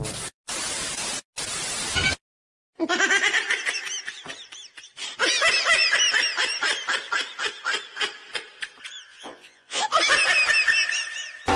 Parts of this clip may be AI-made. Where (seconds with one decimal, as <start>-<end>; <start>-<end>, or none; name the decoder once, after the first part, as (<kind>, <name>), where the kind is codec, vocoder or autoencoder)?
9.1-9.8 (vocoder, Vocos)